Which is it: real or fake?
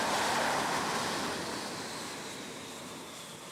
real